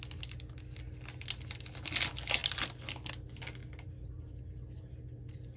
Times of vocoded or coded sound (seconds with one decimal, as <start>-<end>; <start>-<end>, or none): none